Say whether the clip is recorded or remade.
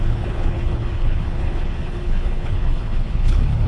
remade